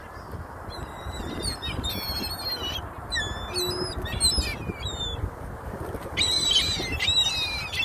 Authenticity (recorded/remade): recorded